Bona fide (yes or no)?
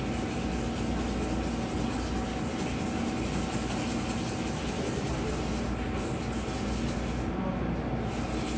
yes